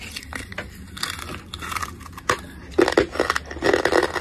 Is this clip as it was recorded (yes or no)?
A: yes